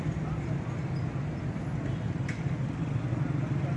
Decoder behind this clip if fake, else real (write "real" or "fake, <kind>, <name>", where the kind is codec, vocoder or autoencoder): real